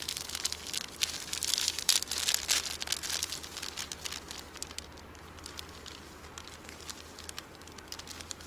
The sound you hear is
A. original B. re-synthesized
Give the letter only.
A